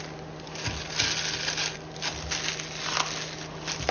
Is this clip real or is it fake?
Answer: real